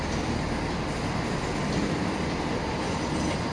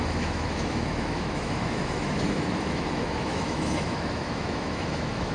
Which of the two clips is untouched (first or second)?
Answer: first